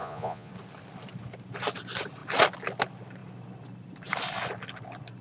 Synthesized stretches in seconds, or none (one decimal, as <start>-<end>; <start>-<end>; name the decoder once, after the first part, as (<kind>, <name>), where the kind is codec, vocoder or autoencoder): 0.0-0.5 (vocoder, Vocos)